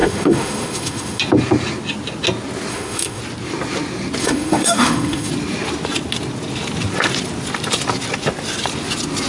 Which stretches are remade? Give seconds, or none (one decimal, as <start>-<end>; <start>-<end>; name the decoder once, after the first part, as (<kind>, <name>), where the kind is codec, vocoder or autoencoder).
0.0-1.2 (autoencoder, DAC-VAE); 2.7-3.2; 4.2-5.3